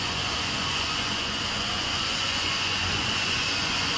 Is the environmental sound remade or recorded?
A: remade